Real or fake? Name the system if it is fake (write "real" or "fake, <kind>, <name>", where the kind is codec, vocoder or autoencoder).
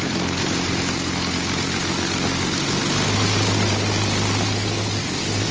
real